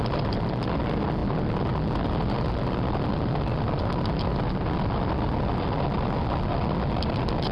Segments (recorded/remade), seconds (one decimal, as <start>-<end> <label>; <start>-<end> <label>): 0.0-7.5 recorded